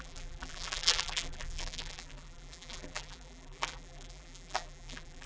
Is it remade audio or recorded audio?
remade